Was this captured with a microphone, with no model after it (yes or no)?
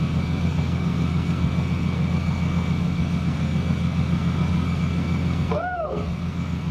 no